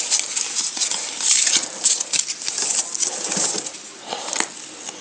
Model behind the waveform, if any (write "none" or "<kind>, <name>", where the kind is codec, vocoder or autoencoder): none